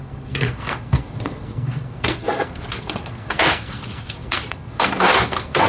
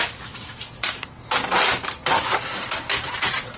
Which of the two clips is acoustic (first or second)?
second